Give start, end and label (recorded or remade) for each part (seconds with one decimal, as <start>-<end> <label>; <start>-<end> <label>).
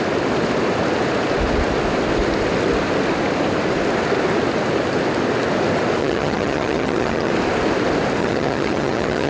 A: 0.0-6.0 recorded; 6.0-7.3 remade; 7.3-8.2 recorded; 8.2-9.3 remade